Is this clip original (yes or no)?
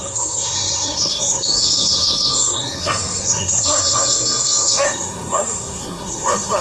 no